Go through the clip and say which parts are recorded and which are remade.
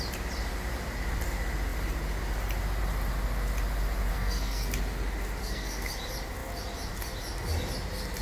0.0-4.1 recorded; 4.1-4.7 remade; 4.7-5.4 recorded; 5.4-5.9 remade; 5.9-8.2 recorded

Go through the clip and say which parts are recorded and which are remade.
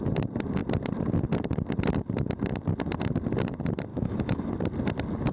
0.0-3.9 recorded; 3.9-4.5 remade; 4.5-5.3 recorded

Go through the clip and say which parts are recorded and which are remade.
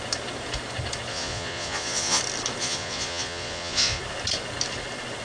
0.0-1.1 recorded; 1.1-2.2 remade; 2.2-2.6 recorded; 2.6-4.0 remade; 4.0-5.2 recorded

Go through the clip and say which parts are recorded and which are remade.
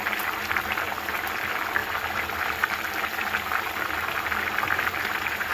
0.0-5.5 recorded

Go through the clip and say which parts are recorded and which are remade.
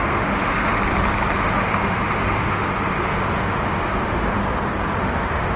0.0-0.8 remade; 0.8-1.4 recorded; 1.4-4.4 remade; 4.4-5.0 recorded; 5.0-5.6 remade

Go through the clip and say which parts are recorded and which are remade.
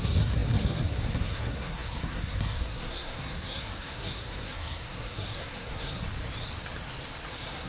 0.0-6.0 remade; 6.0-7.3 recorded; 7.3-7.7 remade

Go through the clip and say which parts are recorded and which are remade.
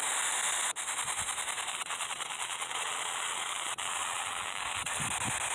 0.0-1.7 recorded; 1.7-5.0 remade; 5.0-5.5 recorded